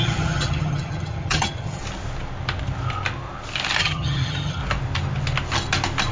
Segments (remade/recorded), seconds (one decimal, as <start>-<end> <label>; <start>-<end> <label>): 0.0-1.8 remade; 1.8-3.8 recorded; 3.8-4.6 remade; 4.6-6.1 recorded